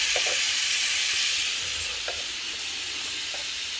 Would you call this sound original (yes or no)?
yes